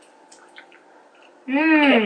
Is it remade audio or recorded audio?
recorded